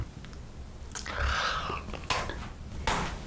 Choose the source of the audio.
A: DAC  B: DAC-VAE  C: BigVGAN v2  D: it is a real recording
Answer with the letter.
D